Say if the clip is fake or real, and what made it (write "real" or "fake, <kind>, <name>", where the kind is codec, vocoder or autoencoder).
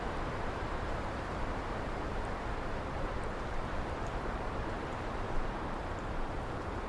fake, vocoder, BigVGAN v2